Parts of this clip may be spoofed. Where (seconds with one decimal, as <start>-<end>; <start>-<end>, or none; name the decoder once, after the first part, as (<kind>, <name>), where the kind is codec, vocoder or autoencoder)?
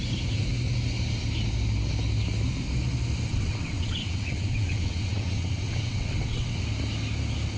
3.3-6.6 (vocoder, WaveNeXt)